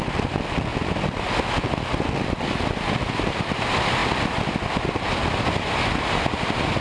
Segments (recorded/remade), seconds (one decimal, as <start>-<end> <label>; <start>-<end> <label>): 0.0-6.8 recorded